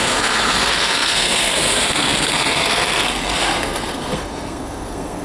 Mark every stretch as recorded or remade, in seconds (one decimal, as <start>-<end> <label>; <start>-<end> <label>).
0.0-5.2 remade